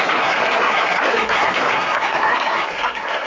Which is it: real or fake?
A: fake